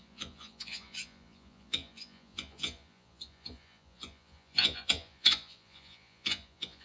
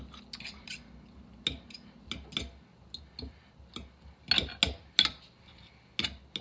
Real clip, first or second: second